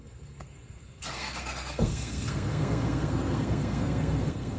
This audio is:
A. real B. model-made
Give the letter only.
B